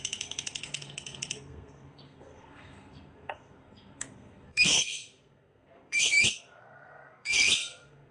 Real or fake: fake